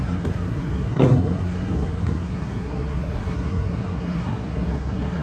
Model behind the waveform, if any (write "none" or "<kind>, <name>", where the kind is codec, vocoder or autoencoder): codec, SNAC